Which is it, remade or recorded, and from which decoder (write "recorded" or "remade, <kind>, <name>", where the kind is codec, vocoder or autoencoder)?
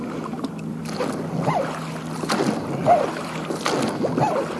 recorded